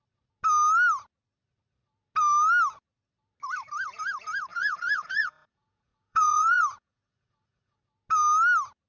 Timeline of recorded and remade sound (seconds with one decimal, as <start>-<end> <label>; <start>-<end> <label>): 0.0-4.5 recorded; 4.5-7.8 remade; 7.8-8.9 recorded